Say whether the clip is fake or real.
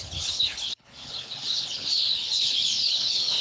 fake